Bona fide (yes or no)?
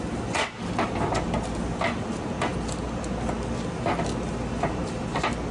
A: yes